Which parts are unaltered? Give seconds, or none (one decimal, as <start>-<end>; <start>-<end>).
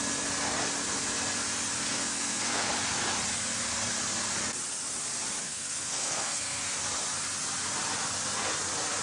0.0-1.9; 2.7-5.4; 6.6-9.0